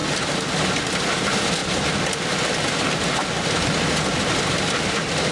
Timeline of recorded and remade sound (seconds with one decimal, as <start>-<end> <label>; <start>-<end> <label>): 0.0-5.3 recorded